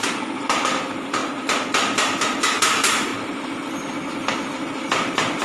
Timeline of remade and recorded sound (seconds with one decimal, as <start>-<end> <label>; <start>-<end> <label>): 0.0-1.2 remade; 1.2-2.6 recorded; 2.6-3.1 remade; 3.1-4.1 recorded; 4.1-5.4 remade